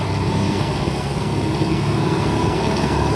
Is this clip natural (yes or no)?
no